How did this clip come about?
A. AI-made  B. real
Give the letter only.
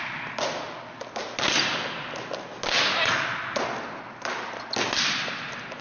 B